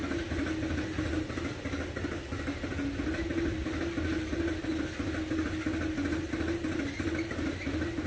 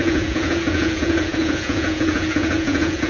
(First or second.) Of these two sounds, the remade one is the second